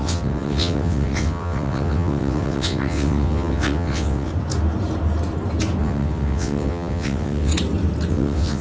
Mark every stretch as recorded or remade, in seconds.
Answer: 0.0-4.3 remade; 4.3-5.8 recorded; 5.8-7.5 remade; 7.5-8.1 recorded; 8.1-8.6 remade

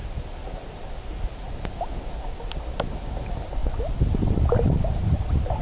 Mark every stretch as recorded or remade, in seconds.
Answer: 0.0-5.6 recorded